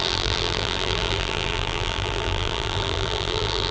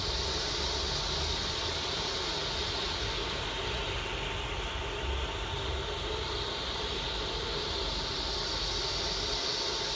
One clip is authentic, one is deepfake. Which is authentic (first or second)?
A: second